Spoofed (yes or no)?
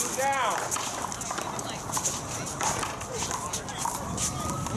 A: no